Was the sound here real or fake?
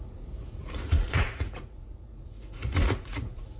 fake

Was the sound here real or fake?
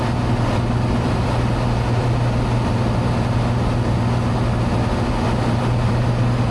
real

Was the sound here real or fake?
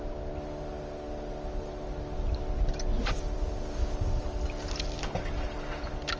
real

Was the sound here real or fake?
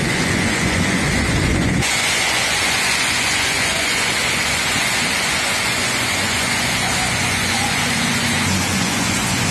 fake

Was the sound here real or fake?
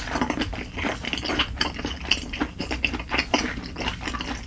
real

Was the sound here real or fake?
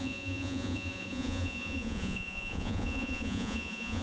fake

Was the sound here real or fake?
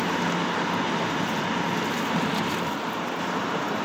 real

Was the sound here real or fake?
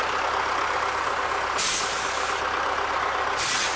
real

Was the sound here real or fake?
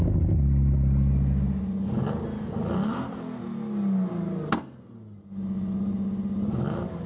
real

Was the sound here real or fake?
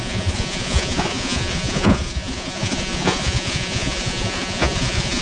fake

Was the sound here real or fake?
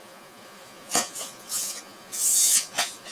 fake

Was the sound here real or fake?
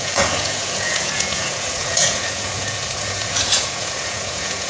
fake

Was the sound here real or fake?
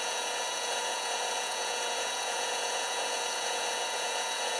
fake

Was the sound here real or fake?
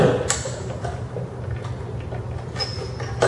real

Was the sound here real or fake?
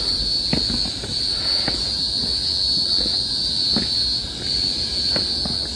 real